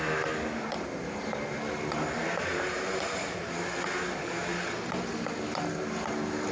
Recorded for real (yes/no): yes